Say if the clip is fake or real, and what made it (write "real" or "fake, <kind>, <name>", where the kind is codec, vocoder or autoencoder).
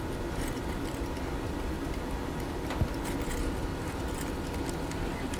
real